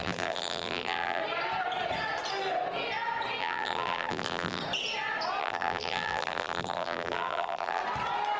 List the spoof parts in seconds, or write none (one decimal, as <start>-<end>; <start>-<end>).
0.0-1.2; 3.4-4.6; 5.4-7.8